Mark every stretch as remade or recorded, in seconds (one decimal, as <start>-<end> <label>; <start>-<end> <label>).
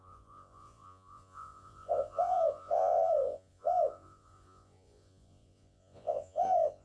0.0-6.8 remade